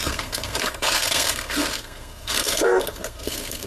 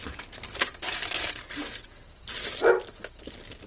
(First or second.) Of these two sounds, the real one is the second